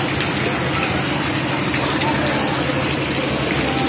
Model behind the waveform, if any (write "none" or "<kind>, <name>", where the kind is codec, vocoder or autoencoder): none